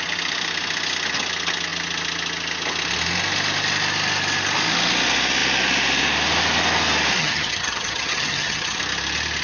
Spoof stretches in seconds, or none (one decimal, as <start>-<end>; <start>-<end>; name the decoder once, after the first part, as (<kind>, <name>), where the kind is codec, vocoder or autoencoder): 7.2-8.8 (vocoder, HiFi-GAN)